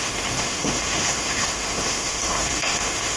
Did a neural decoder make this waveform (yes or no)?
yes